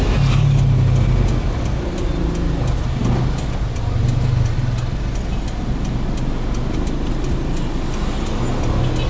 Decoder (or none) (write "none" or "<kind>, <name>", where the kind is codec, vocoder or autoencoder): none